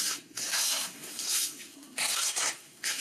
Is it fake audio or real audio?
fake